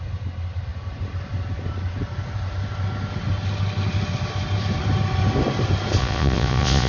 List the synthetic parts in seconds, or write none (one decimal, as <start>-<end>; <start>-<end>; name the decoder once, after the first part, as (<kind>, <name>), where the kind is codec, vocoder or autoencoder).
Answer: 6.0-6.9 (vocoder, Vocos)